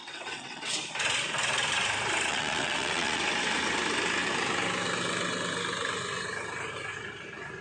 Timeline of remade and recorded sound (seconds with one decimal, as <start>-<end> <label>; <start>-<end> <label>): 0.0-0.7 remade; 0.7-2.3 recorded; 2.3-3.2 remade; 3.2-7.6 recorded